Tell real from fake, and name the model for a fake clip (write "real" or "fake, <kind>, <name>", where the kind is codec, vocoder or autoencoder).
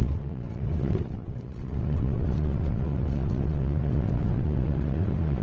fake, vocoder, WaveNeXt